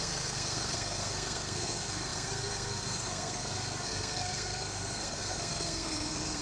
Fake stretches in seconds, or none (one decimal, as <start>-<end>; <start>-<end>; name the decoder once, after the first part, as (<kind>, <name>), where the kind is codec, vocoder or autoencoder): 0.0-6.4 (codec, SNAC)